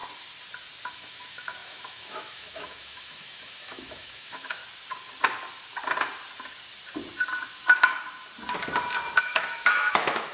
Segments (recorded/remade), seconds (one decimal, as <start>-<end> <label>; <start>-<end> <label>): 0.0-0.9 recorded; 0.9-4.6 remade; 4.6-9.2 recorded; 9.2-10.3 remade